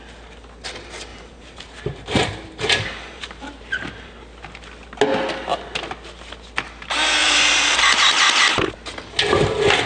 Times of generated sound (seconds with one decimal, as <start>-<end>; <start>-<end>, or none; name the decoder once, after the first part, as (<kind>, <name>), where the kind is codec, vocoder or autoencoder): 1.1-4.1 (vocoder, BigVGAN v2); 7.2-7.8

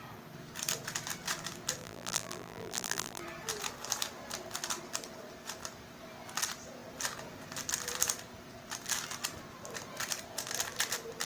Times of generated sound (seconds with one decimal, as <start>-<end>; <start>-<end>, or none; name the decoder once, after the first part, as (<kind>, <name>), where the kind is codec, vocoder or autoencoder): 1.8-3.2 (vocoder, BigVGAN v2)

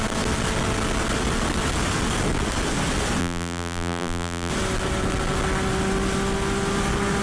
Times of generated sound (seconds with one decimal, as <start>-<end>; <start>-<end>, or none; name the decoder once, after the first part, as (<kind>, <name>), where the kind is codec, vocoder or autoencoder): 3.2-4.5 (vocoder, BigVGAN v2)

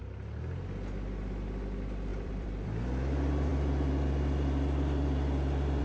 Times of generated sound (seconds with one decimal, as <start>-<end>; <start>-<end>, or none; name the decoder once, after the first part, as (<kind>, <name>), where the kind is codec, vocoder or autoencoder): 2.1-2.8 (vocoder, BigVGAN v2)